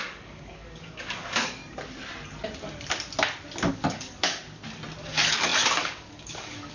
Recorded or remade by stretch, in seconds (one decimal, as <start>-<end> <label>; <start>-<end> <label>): 0.0-1.6 remade; 1.6-3.7 recorded; 3.7-4.4 remade; 4.4-5.0 recorded; 5.0-6.7 remade